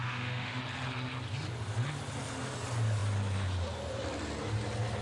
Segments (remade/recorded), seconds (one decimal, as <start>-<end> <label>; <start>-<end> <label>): 0.0-0.6 remade; 0.6-5.0 recorded